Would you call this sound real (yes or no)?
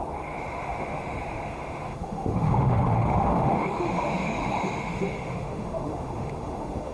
no